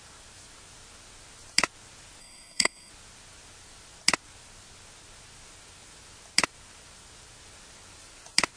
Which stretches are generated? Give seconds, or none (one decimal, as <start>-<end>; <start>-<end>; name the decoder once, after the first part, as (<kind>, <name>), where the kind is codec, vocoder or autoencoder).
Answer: 2.2-2.9 (codec, SNAC)